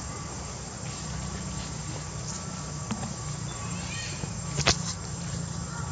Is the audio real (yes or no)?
yes